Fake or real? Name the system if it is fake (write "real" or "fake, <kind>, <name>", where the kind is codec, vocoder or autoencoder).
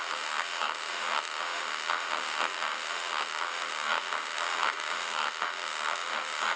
fake, autoencoder, DAC-VAE